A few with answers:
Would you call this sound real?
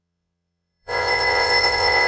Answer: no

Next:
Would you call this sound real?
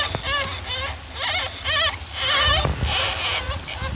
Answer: yes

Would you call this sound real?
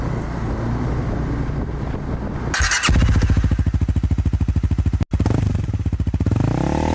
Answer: yes